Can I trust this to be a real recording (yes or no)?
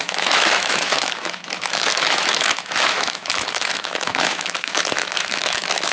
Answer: no